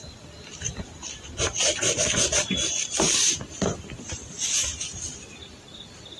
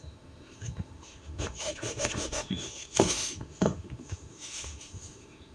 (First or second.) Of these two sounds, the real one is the first